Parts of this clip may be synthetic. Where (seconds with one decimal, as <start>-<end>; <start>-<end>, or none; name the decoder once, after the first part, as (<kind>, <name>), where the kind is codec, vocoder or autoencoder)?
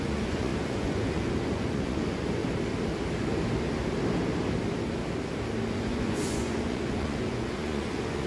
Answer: 0.0-2.4 (vocoder, Vocos); 5.7-8.3